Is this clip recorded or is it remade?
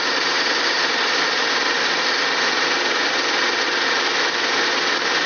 recorded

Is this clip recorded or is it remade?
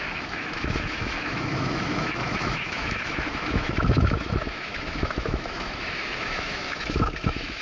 remade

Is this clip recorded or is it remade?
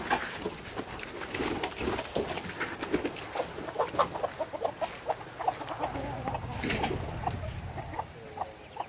recorded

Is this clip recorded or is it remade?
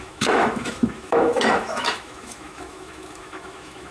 remade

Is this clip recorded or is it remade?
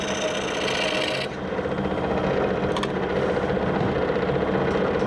recorded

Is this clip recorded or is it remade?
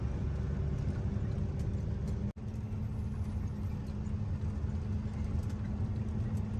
recorded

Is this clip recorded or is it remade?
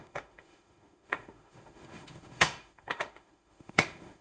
remade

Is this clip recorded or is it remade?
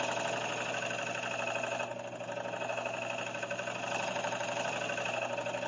recorded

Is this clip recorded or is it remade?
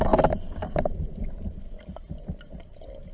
recorded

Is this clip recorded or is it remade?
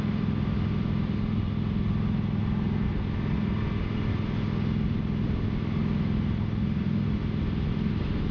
recorded